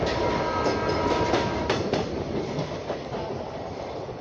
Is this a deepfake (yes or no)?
no